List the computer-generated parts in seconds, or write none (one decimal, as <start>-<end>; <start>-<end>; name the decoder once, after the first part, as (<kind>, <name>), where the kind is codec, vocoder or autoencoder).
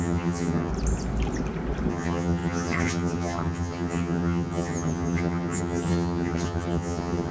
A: 0.0-0.7 (vocoder, HiFi-GAN); 1.9-7.3